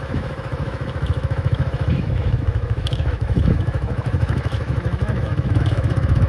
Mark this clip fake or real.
fake